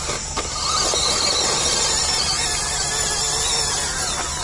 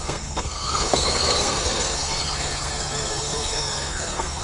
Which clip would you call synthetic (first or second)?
second